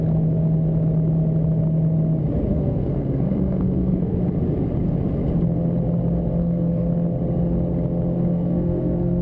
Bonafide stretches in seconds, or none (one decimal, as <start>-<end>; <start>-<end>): 0.0-2.5; 4.2-6.4; 6.9-8.3